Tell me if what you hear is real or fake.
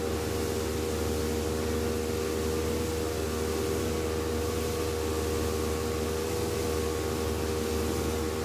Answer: real